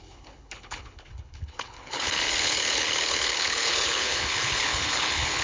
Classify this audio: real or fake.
fake